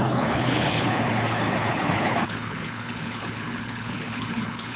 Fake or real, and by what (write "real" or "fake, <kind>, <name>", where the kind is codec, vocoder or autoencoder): fake, codec, HILCodec